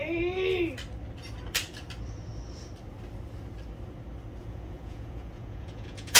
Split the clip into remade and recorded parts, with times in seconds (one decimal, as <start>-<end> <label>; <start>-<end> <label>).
0.0-4.4 recorded; 4.4-6.2 remade